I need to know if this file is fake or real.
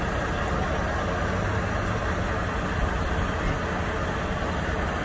real